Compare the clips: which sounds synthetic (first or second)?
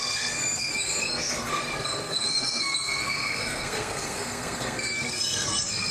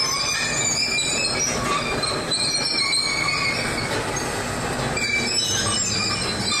first